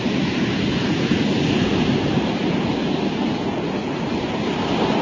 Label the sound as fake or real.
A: real